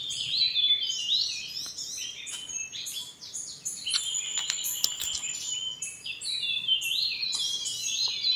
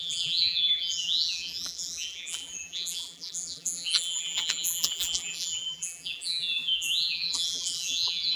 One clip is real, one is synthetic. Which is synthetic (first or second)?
second